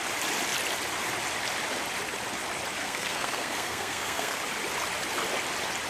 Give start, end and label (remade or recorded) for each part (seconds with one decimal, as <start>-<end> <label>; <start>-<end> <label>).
0.0-2.8 recorded; 2.8-4.4 remade; 4.4-5.9 recorded

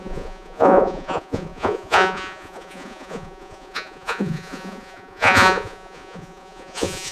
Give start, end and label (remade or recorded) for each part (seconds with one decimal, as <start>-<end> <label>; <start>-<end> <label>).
0.0-7.1 remade

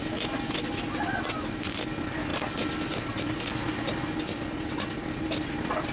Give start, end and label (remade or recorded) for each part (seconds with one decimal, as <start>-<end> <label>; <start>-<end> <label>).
0.0-5.9 recorded

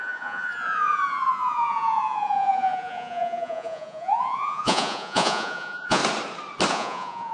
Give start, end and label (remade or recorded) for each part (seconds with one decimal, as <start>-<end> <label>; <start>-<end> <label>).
0.0-6.0 remade; 6.0-6.7 recorded; 6.7-7.3 remade

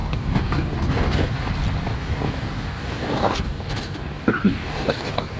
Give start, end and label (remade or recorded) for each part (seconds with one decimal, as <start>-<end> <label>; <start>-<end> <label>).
0.0-1.5 remade; 1.5-1.9 recorded; 1.9-5.4 remade